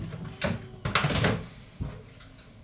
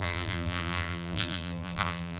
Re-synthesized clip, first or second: second